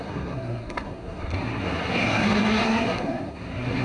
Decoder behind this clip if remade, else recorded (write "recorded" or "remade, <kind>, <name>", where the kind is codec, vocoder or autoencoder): remade, codec, SNAC